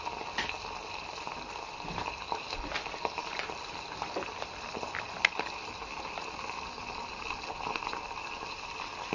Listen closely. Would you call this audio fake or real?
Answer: real